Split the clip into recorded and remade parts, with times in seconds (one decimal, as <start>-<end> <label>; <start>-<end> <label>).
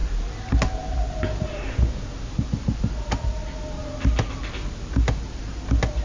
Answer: 0.0-6.0 recorded